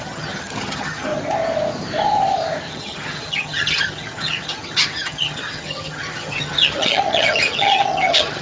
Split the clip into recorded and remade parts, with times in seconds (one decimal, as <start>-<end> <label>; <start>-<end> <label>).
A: 0.0-1.1 remade; 1.1-2.7 recorded; 2.7-8.4 remade